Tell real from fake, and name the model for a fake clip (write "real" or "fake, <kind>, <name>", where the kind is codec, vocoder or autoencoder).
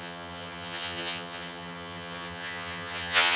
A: fake, vocoder, HiFi-GAN